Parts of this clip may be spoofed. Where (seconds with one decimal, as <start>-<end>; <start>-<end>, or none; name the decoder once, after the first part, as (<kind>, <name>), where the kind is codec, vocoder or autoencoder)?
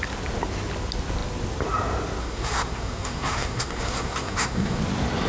2.2-4.8 (codec, SNAC)